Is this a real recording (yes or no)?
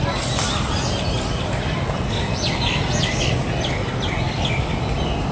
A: yes